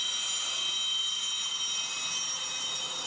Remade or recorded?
recorded